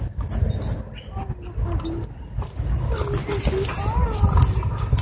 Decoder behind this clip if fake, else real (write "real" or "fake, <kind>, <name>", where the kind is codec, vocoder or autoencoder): real